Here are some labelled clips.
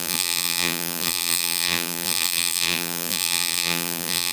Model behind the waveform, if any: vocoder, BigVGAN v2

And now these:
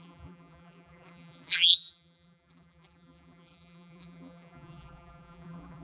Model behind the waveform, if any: vocoder, BigVGAN v2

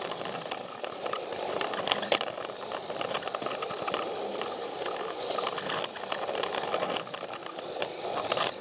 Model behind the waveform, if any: none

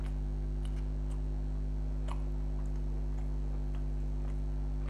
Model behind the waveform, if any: none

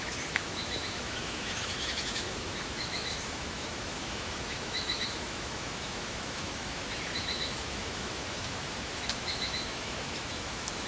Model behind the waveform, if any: autoencoder, DAC-VAE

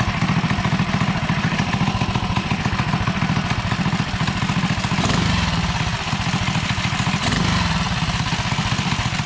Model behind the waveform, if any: none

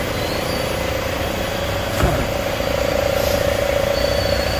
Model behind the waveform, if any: none